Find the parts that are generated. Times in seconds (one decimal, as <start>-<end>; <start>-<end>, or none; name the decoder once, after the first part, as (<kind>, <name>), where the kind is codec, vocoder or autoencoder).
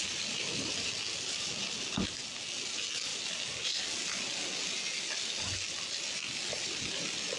none